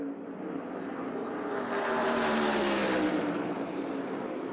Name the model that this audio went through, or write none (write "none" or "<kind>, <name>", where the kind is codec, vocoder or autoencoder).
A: vocoder, BigVGAN v2